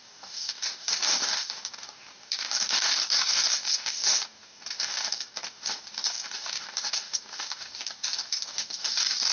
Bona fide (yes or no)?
no